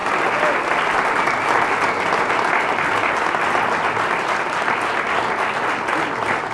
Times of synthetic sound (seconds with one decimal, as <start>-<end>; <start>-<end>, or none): none